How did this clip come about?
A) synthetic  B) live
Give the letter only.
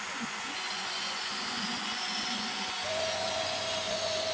A